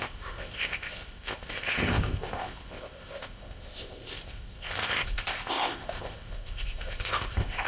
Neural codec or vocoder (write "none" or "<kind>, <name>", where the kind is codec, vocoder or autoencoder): codec, ZipCodec